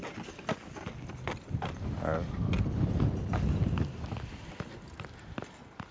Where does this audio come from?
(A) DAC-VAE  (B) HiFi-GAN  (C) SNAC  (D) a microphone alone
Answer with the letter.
D